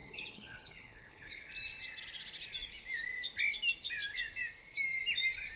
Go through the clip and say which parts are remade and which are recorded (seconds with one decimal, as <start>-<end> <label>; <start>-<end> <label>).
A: 0.0-1.5 remade; 1.5-5.6 recorded